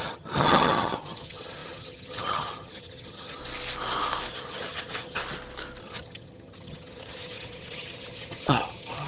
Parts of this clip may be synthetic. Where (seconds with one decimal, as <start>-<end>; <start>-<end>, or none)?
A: 0.0-3.4; 4.3-5.2; 5.8-9.1